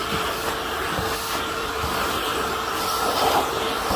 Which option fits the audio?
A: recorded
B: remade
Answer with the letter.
B